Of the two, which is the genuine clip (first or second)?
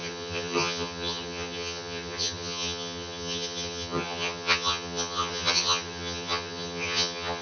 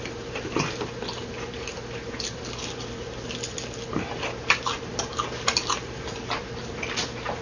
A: second